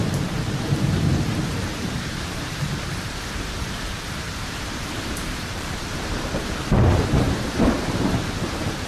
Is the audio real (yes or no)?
no